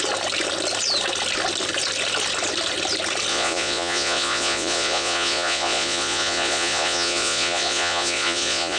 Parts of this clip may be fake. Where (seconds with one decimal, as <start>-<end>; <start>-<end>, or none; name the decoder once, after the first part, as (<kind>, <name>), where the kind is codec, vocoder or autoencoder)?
3.3-8.8 (vocoder, Vocos)